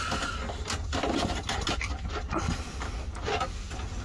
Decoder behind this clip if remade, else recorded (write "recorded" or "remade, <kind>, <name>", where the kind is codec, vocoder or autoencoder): recorded